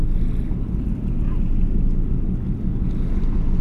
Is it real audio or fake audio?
real